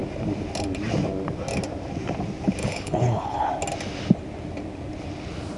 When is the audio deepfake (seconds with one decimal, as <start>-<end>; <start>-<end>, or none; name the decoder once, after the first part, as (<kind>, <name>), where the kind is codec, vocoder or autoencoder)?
2.6-3.5 (codec, HILCodec)